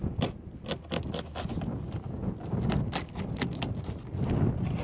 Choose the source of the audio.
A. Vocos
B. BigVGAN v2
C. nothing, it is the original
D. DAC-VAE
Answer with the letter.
C